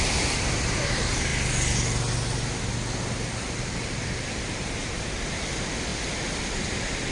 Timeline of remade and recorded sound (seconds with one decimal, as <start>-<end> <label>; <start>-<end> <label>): 0.0-1.3 remade; 1.3-3.6 recorded; 3.6-5.9 remade; 5.9-7.1 recorded